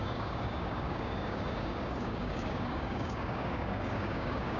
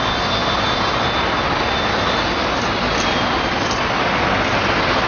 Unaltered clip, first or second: second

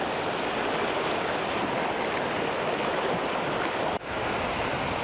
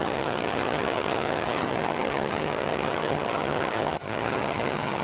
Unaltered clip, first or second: first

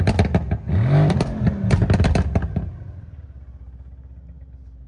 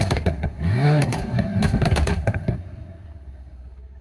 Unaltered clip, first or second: first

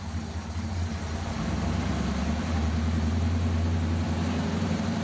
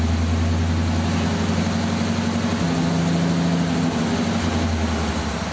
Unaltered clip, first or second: second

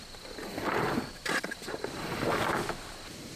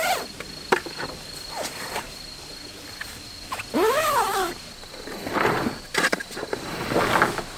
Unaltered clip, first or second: second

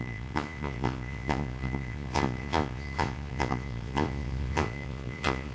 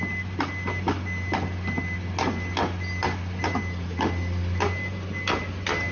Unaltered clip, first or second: second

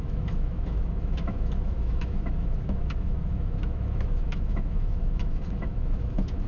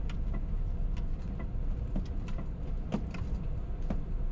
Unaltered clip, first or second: second